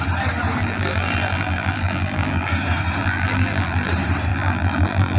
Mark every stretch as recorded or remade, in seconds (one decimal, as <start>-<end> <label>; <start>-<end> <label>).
0.0-0.6 recorded; 0.6-2.5 remade; 2.5-3.0 recorded; 3.0-3.9 remade; 3.9-4.3 recorded; 4.3-5.2 remade